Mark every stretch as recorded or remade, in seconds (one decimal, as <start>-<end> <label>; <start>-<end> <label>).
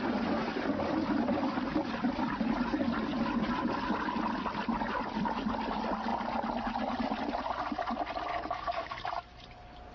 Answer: 0.0-8.3 recorded; 8.3-8.9 remade; 8.9-9.9 recorded